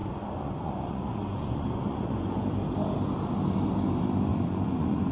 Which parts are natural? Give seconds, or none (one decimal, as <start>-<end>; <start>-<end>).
2.5-4.3